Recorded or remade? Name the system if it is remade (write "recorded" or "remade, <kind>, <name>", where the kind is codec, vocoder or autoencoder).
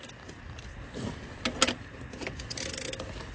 recorded